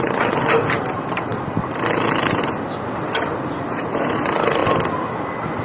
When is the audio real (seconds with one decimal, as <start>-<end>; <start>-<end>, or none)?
0.0-5.6

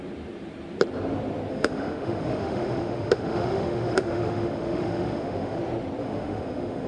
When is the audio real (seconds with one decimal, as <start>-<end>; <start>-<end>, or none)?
0.0-1.5; 5.6-6.0

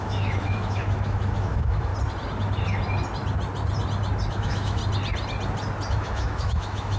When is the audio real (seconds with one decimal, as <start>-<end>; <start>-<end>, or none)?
1.9-4.3; 4.8-5.9

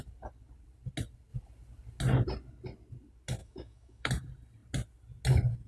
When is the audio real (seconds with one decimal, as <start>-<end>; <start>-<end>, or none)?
0.0-3.4; 4.1-5.7

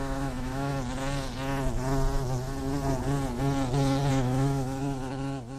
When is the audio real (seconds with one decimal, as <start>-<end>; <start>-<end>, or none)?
0.7-4.1